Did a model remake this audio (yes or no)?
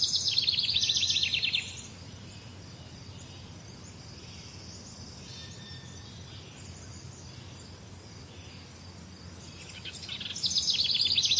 no